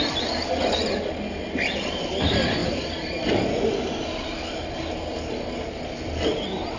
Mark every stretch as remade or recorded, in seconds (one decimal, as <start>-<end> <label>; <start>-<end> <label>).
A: 0.0-6.8 recorded